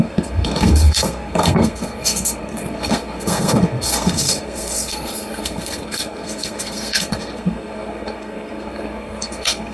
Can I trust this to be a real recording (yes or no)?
no